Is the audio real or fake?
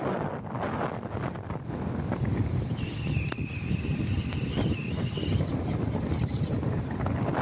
real